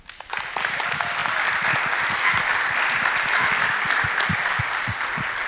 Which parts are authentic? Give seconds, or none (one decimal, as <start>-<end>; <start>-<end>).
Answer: 0.0-5.5